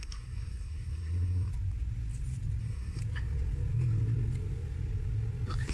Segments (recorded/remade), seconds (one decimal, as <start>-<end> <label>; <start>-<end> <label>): 0.0-1.5 remade; 1.5-2.6 recorded; 2.6-3.0 remade; 3.0-5.7 recorded